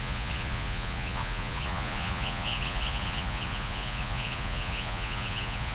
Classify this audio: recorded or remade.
remade